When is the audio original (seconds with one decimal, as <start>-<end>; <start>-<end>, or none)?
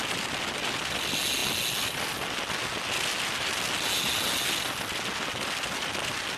0.0-6.4